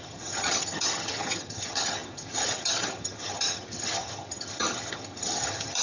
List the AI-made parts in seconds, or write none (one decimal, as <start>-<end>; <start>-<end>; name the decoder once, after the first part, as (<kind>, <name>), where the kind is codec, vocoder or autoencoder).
0.0-5.8 (vocoder, HiFi-GAN)